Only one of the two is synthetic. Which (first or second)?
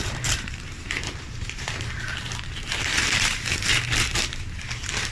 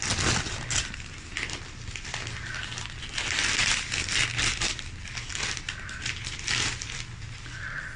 first